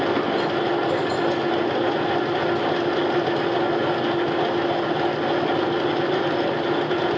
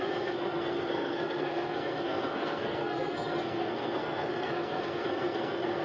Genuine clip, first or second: first